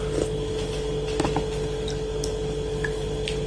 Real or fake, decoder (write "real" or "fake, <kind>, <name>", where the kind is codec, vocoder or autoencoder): real